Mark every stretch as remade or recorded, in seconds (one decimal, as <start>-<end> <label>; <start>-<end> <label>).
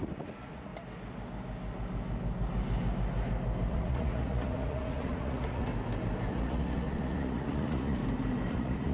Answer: 0.0-0.7 remade; 0.7-3.7 recorded; 3.7-5.7 remade; 5.7-6.3 recorded; 6.3-8.0 remade; 8.0-8.5 recorded; 8.5-8.9 remade